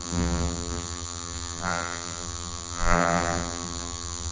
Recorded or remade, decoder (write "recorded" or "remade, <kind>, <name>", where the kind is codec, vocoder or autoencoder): remade, vocoder, BigVGAN v2